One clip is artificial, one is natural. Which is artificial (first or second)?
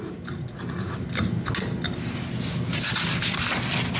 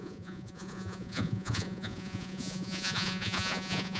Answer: second